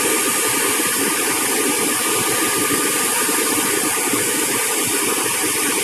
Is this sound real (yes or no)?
yes